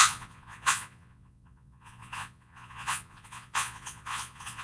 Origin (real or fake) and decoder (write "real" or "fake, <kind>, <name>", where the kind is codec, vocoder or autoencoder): fake, vocoder, Vocos